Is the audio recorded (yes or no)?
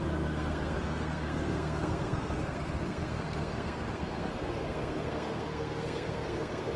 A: no